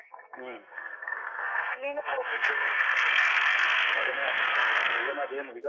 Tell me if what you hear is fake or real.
fake